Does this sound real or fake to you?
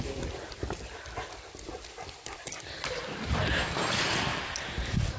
real